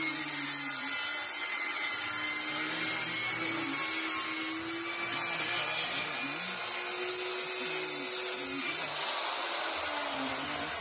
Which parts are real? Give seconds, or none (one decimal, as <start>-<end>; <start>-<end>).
0.0-1.4; 1.9-10.8